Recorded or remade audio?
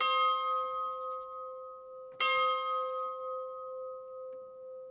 recorded